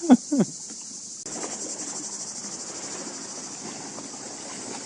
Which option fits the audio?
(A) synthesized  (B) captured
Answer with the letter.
B